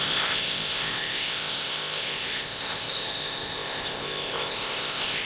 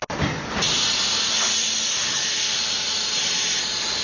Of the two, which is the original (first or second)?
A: second